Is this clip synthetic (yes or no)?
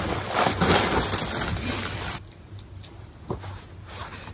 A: no